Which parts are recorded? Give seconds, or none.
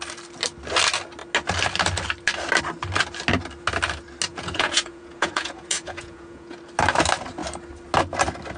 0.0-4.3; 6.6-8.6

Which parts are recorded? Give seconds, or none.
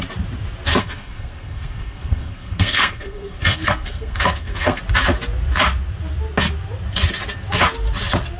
0.0-0.8; 4.8-8.4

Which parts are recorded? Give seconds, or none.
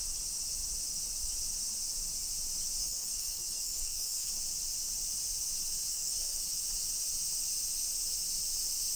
0.0-2.8; 4.3-5.9; 6.4-9.0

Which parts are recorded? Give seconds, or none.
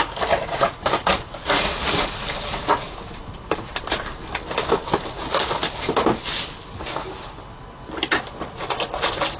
0.0-9.4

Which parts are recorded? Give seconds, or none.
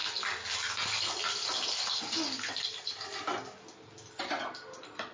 0.0-5.1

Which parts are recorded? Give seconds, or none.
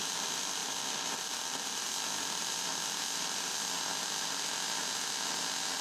0.0-0.6; 1.8-5.8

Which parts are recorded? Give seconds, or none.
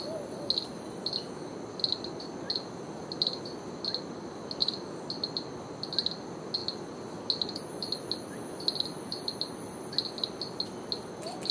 0.0-11.5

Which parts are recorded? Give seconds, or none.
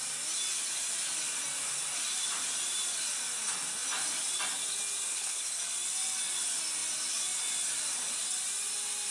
0.0-5.1; 5.6-9.1